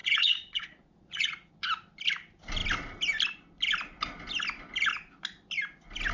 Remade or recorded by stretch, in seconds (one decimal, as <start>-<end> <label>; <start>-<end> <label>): 0.0-1.5 remade; 1.5-6.1 recorded